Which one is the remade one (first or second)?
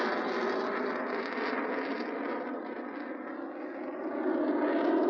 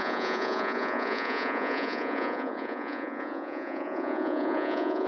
second